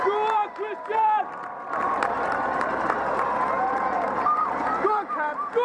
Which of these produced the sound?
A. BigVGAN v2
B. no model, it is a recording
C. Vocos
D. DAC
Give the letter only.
A